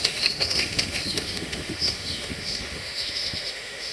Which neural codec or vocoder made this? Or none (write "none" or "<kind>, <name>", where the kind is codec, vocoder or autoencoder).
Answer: autoencoder, DAC-VAE